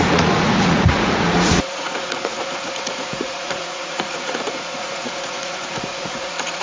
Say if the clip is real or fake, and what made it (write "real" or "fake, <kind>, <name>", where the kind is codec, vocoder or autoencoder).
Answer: fake, vocoder, Vocos